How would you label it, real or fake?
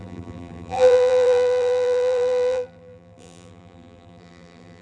fake